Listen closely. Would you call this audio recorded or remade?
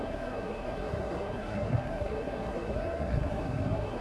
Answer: remade